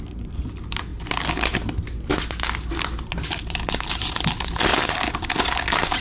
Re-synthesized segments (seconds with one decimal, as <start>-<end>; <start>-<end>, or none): 0.0-0.9; 4.3-6.0